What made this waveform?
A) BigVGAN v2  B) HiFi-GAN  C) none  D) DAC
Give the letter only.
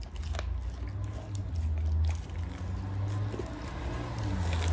C